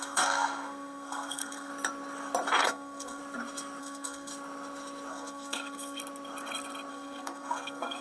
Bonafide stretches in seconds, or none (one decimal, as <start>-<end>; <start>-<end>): 1.7-2.6; 3.2-3.8; 4.3-5.1; 6.0-6.9